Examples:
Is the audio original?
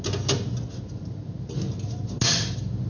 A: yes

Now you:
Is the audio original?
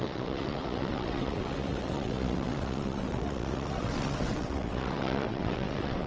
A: no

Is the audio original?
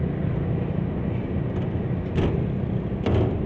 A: yes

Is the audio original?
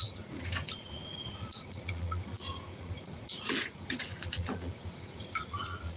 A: no